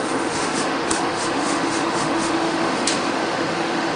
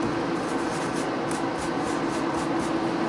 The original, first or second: second